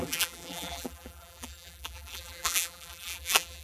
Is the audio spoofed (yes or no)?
yes